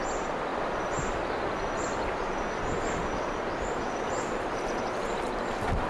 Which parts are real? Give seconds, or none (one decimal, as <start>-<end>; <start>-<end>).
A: none